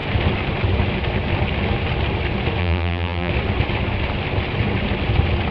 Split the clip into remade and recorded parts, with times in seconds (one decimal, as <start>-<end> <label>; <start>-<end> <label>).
0.0-2.6 recorded; 2.6-3.3 remade; 3.3-5.5 recorded